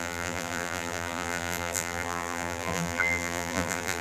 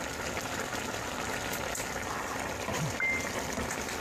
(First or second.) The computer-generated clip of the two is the first